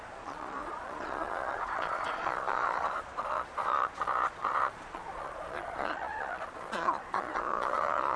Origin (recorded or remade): remade